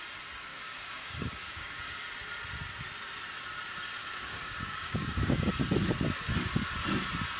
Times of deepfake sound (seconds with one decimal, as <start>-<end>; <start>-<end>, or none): 0.5-1.8; 4.0-5.5